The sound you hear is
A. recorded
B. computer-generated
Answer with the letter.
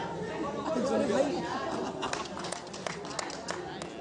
A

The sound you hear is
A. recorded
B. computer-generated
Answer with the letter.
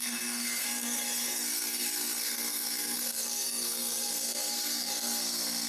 B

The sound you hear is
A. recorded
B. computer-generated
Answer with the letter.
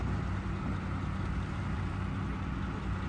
A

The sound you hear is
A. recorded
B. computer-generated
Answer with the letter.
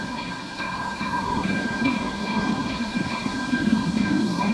B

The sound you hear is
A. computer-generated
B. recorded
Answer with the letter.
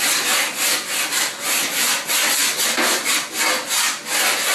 B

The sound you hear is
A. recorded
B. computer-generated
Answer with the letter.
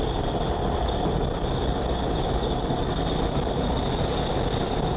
A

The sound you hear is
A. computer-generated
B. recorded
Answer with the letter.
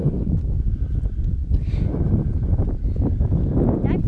B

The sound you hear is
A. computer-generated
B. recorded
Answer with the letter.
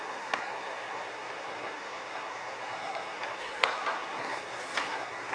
A